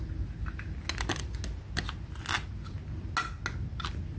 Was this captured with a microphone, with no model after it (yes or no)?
yes